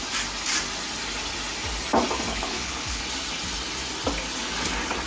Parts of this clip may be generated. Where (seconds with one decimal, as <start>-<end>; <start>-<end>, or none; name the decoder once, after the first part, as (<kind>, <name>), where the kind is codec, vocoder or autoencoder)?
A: 2.3-3.0 (codec, HILCodec)